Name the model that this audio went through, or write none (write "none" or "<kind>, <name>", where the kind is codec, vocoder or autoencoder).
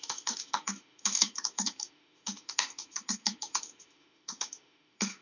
autoencoder, DAC-VAE